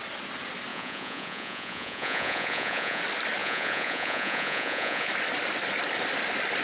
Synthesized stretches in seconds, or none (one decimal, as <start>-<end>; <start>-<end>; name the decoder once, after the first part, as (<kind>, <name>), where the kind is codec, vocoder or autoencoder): 0.7-3.0 (vocoder, Vocos); 3.4-5.1